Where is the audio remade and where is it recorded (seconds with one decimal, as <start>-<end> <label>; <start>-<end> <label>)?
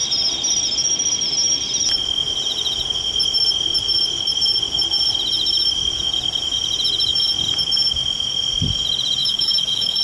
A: 0.0-9.2 recorded; 9.2-10.0 remade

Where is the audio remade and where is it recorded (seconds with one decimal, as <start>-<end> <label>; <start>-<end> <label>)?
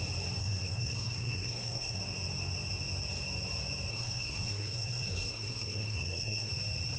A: 0.0-0.4 recorded; 0.4-2.0 remade; 2.0-3.9 recorded; 3.9-6.5 remade; 6.5-7.0 recorded